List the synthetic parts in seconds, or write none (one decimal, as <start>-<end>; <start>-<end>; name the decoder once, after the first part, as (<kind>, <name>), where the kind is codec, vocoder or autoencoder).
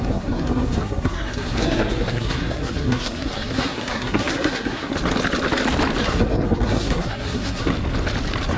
0.0-4.9 (codec, SNAC); 6.0-7.7